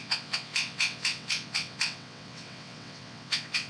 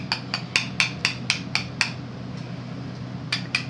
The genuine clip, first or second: second